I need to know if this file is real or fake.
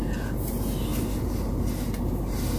real